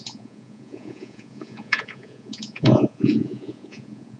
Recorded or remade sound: remade